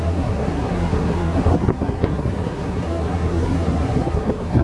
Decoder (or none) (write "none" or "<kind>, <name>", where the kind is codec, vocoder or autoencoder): codec, SNAC